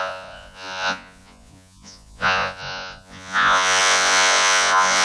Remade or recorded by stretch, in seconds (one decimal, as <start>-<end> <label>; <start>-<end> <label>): 0.0-5.0 remade